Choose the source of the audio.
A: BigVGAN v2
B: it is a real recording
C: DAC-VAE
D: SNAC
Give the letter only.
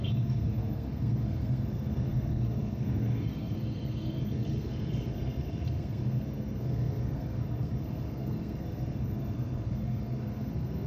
D